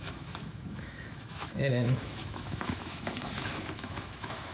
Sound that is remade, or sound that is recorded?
remade